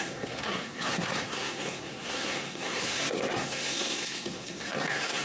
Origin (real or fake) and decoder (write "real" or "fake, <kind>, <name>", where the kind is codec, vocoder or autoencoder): fake, codec, SNAC